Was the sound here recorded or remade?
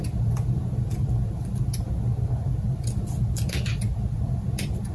recorded